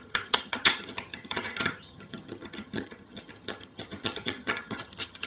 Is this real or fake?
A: fake